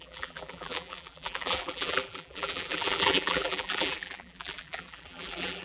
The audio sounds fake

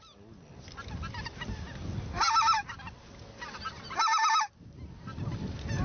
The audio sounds real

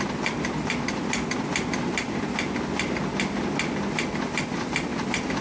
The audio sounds real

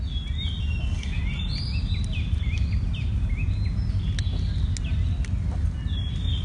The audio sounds real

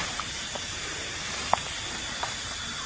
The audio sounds fake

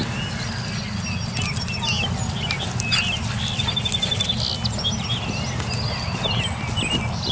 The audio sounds real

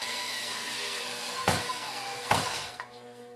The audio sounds fake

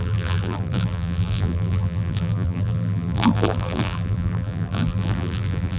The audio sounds fake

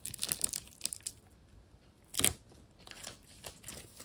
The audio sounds real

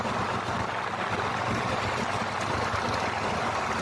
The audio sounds real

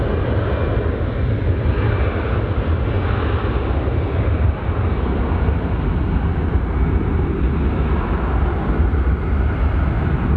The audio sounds real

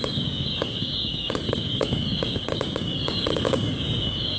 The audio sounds fake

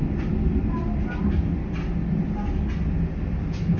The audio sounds real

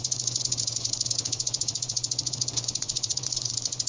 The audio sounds fake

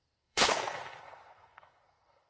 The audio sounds fake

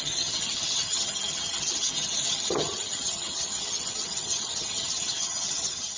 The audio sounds fake